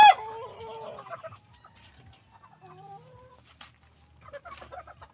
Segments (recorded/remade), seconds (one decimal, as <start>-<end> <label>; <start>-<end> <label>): 0.0-5.1 recorded